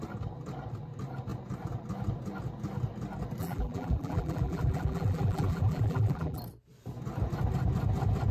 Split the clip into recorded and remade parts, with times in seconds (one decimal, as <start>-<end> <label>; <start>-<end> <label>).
0.0-3.4 recorded; 3.4-6.4 remade; 6.4-8.3 recorded